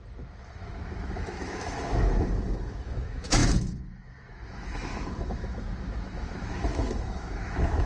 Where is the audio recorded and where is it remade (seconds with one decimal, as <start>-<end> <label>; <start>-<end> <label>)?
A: 0.0-7.9 remade